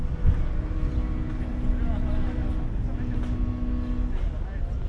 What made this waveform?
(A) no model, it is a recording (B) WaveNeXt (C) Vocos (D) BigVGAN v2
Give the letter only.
A